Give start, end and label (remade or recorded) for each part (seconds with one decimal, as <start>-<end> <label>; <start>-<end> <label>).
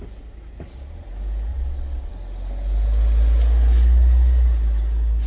0.0-1.5 recorded; 1.5-2.1 remade; 2.1-5.3 recorded